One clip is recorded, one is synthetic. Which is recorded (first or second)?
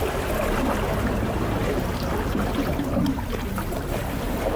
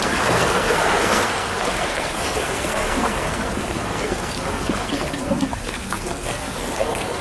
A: first